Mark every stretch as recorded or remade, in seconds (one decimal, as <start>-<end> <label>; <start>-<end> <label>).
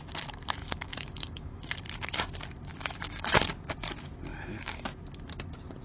0.0-0.6 recorded; 0.6-1.7 remade; 1.7-2.7 recorded; 2.7-3.4 remade; 3.4-4.3 recorded; 4.3-4.9 remade; 4.9-5.8 recorded